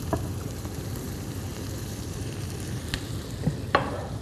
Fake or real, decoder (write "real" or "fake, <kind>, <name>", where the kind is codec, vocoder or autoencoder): fake, vocoder, BigVGAN v2